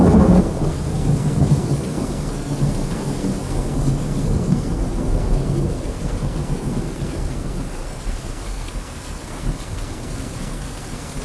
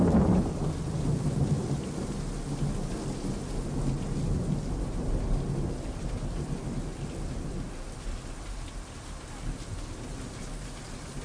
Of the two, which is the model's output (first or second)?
first